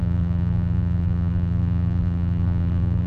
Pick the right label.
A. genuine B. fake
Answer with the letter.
B